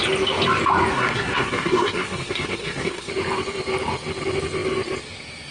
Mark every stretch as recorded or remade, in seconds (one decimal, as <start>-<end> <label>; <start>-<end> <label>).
0.0-0.9 recorded; 0.9-3.1 remade; 3.1-5.5 recorded